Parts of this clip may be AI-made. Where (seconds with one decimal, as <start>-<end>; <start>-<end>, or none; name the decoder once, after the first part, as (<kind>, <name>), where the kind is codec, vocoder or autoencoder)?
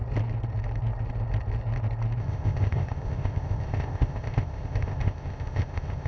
2.2-6.1 (codec, ZipCodec)